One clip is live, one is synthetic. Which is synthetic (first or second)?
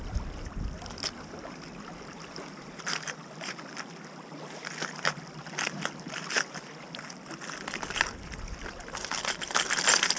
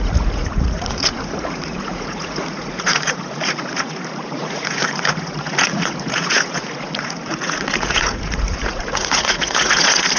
second